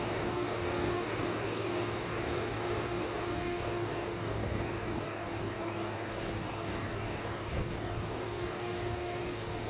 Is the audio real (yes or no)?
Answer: no